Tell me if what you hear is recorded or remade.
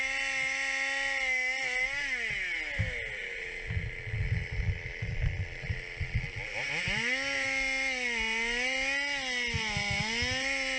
recorded